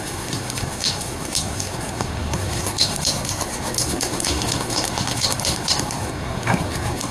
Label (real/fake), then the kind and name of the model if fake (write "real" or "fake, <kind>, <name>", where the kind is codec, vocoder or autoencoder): fake, codec, SNAC